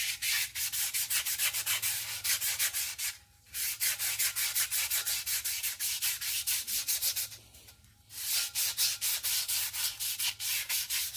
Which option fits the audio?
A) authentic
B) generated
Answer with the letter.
A